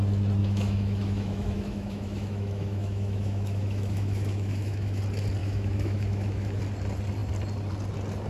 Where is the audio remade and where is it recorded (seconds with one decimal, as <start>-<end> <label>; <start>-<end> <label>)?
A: 0.0-0.4 recorded; 0.4-5.0 remade; 5.0-5.4 recorded; 5.4-6.6 remade; 6.6-8.3 recorded